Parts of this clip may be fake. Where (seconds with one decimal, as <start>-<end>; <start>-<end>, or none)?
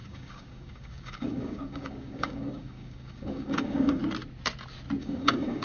0.0-4.0; 5.0-5.6